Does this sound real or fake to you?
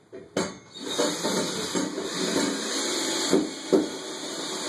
real